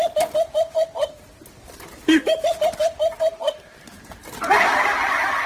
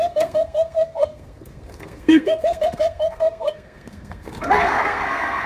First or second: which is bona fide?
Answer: first